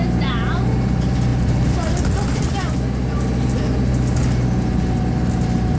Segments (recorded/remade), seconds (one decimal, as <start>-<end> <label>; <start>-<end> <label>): 0.0-5.8 recorded